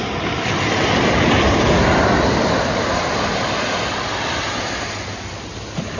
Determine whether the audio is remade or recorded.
recorded